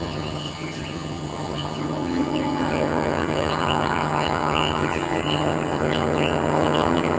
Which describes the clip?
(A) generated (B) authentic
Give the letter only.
A